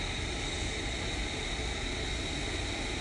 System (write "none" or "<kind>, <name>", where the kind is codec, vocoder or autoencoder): none